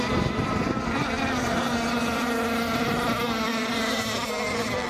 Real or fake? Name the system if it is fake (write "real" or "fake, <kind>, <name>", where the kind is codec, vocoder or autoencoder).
real